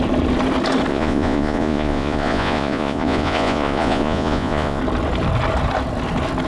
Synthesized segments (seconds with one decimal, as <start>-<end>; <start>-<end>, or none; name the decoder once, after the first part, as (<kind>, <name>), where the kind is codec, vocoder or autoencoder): 0.9-4.8 (vocoder, Vocos)